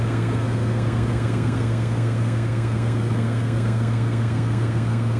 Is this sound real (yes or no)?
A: no